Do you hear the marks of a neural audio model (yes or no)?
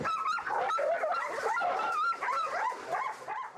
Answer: no